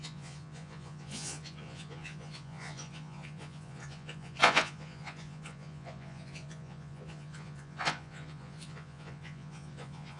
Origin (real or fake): fake